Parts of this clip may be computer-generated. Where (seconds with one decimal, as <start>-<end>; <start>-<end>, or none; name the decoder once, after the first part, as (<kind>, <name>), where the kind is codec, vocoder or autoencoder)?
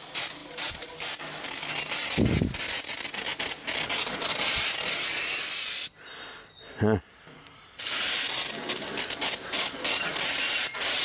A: none